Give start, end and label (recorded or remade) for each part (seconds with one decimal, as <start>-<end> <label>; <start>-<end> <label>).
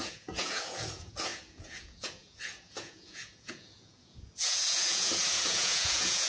0.0-6.3 remade